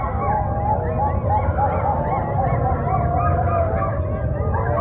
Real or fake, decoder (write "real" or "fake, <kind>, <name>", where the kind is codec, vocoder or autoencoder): real